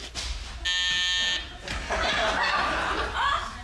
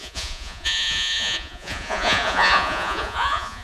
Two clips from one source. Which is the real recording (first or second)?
first